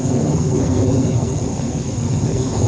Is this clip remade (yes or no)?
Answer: yes